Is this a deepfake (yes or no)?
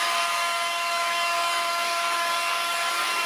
yes